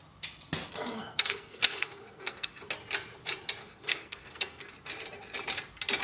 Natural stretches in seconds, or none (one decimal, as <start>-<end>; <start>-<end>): 0.0-0.7; 2.6-3.6; 4.7-6.0